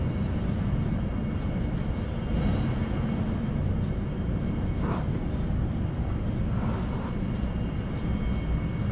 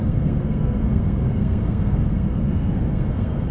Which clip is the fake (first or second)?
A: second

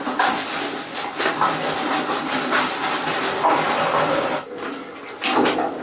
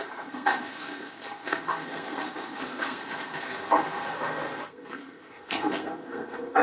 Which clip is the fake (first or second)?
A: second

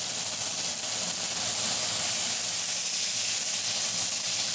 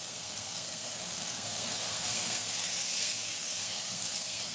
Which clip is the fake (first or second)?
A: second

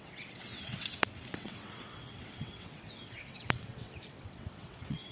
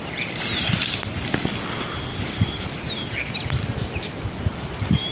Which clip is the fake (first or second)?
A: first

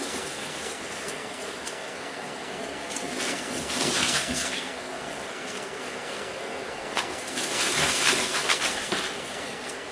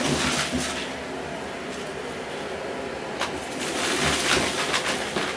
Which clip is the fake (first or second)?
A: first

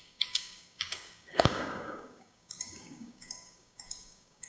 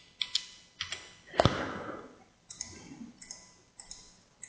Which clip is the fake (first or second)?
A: first